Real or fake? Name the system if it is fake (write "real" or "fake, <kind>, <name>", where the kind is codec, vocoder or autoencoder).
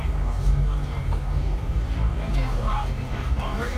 fake, codec, DAC